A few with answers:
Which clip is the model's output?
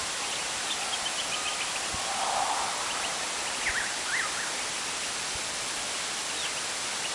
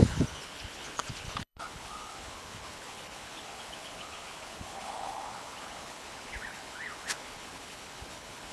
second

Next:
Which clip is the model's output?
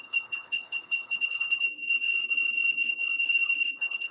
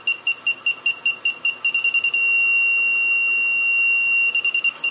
first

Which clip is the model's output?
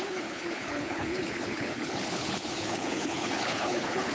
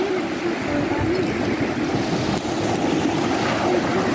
first